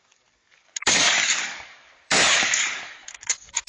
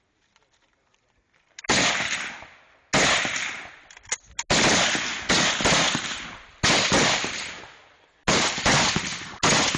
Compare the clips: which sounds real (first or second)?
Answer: second